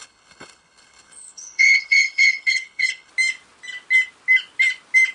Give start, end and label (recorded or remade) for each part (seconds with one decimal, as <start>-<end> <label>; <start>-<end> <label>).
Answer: 0.0-3.1 remade; 3.1-5.1 recorded